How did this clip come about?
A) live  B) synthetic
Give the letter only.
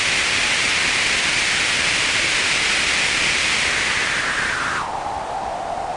A